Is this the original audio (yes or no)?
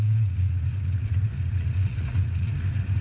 no